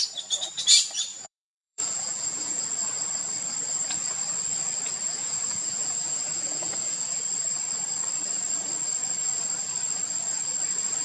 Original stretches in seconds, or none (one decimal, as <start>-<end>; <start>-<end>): 0.0-1.1; 2.6-5.0; 7.2-11.0